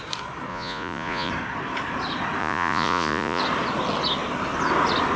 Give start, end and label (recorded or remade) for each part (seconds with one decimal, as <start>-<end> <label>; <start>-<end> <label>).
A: 0.0-0.5 recorded; 0.5-1.3 remade; 1.3-2.4 recorded; 2.4-3.4 remade; 3.4-5.2 recorded